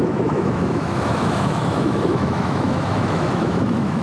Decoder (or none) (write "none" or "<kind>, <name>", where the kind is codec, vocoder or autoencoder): autoencoder, DAC-VAE